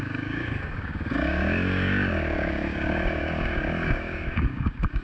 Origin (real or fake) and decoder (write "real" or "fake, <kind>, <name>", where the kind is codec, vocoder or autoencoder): fake, codec, DAC